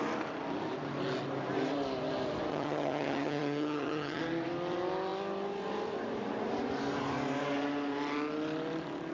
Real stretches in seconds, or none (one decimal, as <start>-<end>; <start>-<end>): 0.0-2.5; 4.2-9.1